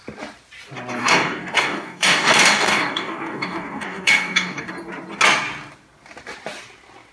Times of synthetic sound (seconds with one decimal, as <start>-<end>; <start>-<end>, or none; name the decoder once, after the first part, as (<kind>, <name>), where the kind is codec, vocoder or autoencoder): 1.0-4.7 (codec, DAC)